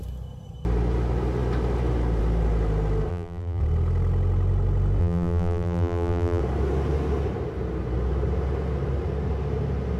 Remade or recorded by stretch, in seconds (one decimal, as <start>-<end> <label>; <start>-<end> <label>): 0.0-3.1 recorded; 3.1-3.6 remade; 3.6-5.0 recorded; 5.0-6.4 remade; 6.4-10.0 recorded